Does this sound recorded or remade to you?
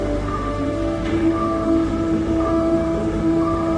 remade